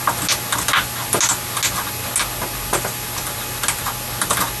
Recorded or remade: recorded